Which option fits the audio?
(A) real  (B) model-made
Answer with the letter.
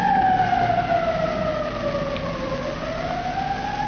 A